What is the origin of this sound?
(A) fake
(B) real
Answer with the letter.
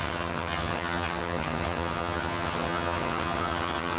A